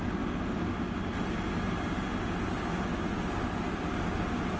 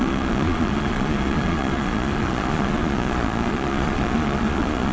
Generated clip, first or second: second